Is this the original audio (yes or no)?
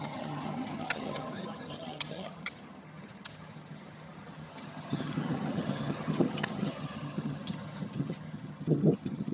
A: no